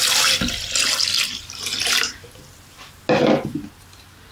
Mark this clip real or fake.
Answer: real